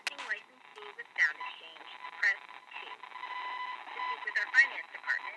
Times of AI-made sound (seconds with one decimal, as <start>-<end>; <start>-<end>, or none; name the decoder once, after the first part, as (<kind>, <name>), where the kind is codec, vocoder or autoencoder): none